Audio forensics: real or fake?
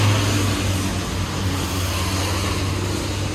real